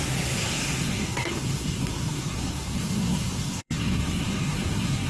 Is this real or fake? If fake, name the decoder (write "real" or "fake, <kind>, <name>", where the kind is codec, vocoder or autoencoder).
fake, codec, SNAC